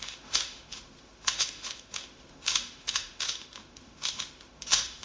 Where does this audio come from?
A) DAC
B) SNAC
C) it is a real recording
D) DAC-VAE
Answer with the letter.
D